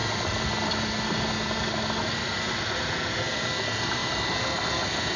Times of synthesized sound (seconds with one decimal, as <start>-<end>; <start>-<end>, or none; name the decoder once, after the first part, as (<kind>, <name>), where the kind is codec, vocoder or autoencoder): none